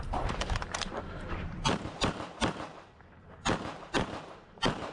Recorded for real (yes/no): no